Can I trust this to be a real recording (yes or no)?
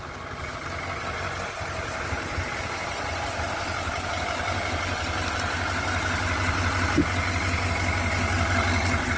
yes